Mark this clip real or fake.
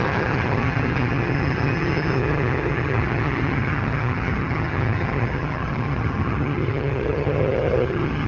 fake